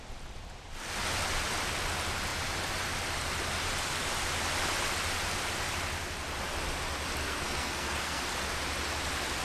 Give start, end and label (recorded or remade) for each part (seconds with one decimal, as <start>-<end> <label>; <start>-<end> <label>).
0.0-7.2 recorded; 7.2-8.2 remade; 8.2-9.4 recorded